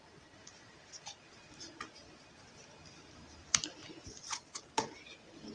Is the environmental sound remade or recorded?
recorded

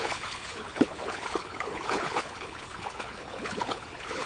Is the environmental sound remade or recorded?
remade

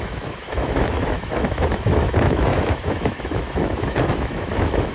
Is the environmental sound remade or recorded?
remade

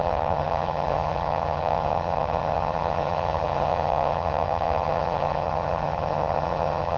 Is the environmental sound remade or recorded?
remade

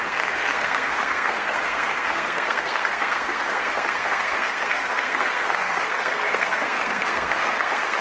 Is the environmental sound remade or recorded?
remade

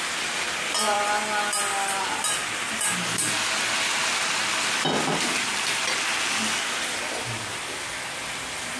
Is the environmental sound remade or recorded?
recorded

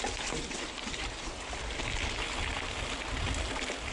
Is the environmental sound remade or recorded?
recorded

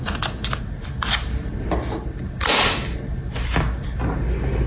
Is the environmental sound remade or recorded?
recorded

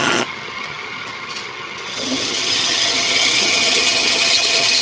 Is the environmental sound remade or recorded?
remade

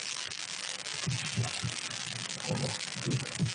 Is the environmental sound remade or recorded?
recorded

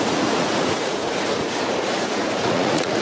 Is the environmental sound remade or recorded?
remade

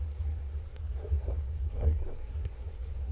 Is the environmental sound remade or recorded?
remade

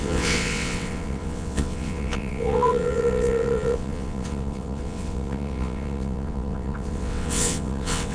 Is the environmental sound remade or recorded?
remade